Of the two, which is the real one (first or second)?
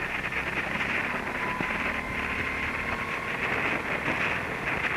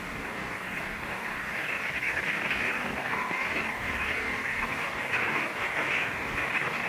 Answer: first